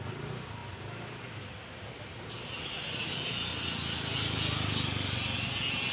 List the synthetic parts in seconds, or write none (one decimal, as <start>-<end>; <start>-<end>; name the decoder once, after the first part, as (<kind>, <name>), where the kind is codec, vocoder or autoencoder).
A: none